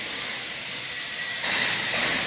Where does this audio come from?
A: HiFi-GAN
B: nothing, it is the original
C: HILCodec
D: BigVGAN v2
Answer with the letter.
D